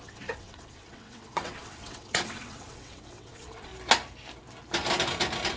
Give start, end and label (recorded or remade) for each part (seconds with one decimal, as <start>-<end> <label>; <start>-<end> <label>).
0.0-3.7 remade; 3.7-5.6 recorded